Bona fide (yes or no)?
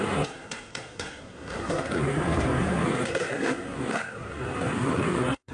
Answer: no